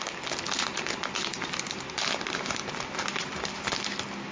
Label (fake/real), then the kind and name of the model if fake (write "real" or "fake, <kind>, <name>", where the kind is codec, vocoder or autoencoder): real